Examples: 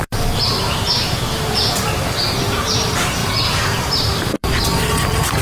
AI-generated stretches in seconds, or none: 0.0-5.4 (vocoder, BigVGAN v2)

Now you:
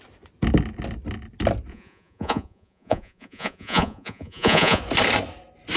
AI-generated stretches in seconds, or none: 1.7-4.8 (vocoder, Vocos)

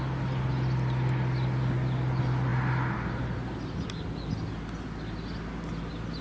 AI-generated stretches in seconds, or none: none

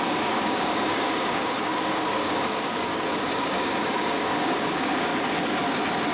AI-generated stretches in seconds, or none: 0.0-5.1 (codec, DAC)